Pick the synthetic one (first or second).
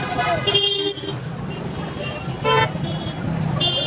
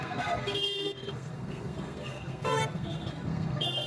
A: second